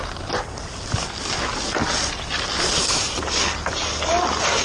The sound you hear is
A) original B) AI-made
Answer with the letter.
A